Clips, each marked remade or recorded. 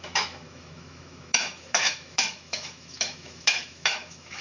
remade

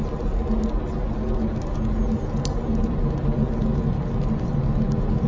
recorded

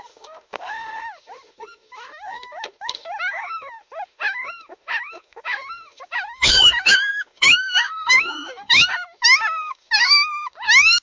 remade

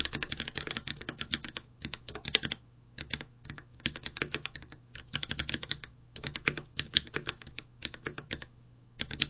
remade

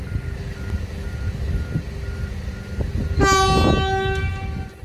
recorded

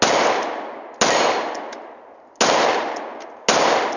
recorded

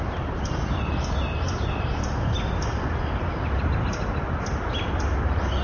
recorded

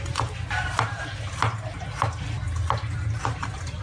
recorded